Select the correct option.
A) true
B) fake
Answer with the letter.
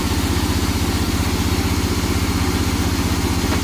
A